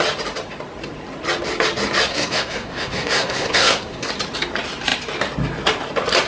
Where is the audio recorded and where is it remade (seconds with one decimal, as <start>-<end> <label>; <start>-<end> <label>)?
0.0-2.1 recorded; 2.1-4.1 remade; 4.1-6.3 recorded